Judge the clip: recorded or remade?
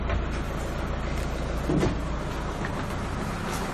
recorded